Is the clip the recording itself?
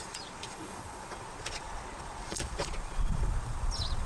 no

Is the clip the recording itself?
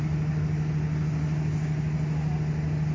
yes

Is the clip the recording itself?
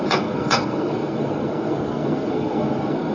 no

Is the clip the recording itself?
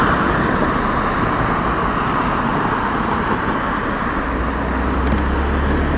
yes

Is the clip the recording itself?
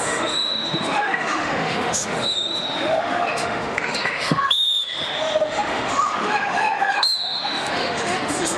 no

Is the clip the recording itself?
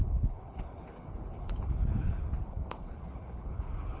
no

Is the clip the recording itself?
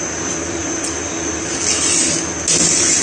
yes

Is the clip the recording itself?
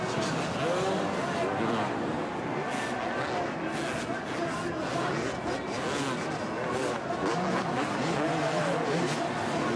yes